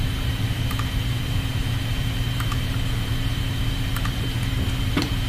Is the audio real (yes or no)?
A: no